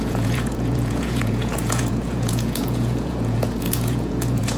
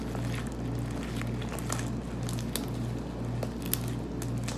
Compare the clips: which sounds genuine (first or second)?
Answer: second